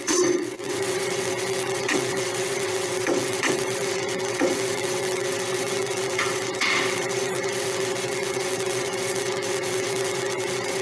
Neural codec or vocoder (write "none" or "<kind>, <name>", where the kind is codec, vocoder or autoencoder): vocoder, WaveNeXt